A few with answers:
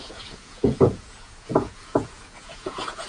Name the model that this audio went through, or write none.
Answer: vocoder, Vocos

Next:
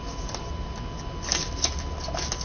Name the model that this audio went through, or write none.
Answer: none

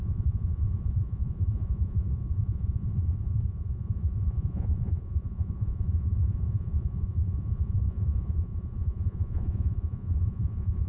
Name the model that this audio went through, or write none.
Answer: vocoder, Vocos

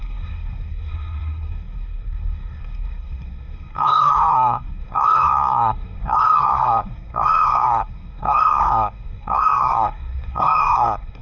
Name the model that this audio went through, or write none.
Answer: codec, SNAC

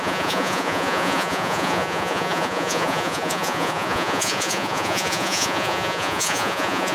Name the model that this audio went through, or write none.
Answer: vocoder, Vocos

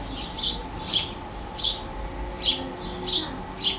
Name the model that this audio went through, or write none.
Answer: none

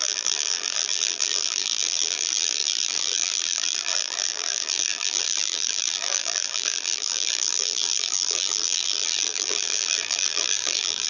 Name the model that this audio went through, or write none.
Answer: vocoder, BigVGAN v2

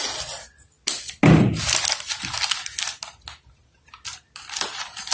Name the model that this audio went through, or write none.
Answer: none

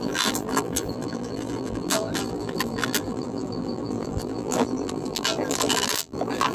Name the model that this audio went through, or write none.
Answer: vocoder, BigVGAN v2